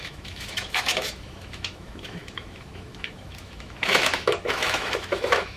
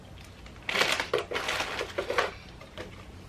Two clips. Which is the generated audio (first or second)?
first